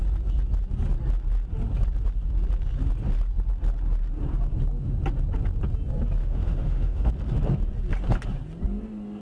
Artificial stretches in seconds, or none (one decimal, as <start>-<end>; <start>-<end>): 6.2-7.1